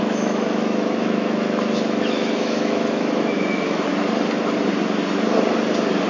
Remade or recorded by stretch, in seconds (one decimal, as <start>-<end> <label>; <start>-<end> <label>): 0.0-3.9 remade; 3.9-6.1 recorded

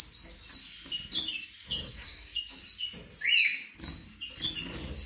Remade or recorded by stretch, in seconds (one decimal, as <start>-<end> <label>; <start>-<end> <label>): 0.0-1.6 recorded; 1.6-2.6 remade; 2.6-5.1 recorded

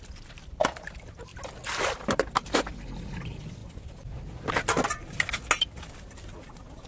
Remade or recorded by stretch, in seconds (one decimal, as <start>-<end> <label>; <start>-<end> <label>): 0.0-6.9 recorded